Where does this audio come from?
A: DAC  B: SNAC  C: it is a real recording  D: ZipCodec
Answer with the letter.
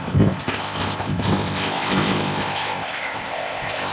D